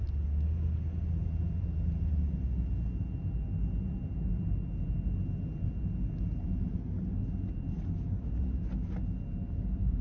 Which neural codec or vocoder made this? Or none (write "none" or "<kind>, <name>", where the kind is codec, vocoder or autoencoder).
none